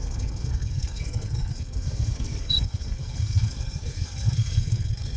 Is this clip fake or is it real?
fake